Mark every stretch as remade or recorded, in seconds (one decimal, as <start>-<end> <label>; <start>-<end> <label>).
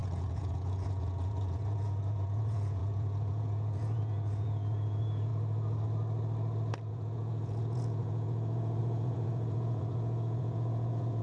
0.0-5.3 remade; 5.3-6.9 recorded; 6.9-11.2 remade